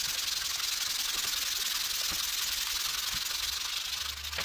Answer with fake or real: real